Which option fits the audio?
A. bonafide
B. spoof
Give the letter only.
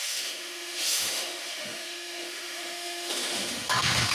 B